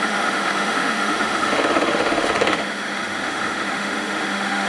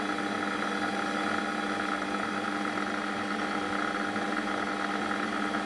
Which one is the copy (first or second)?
first